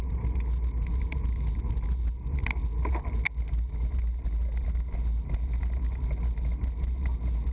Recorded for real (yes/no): yes